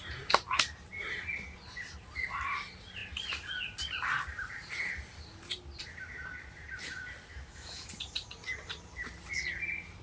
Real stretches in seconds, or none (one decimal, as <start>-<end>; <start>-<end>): 0.0-7.3; 7.9-10.0